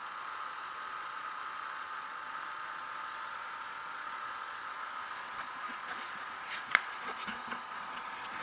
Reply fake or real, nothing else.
fake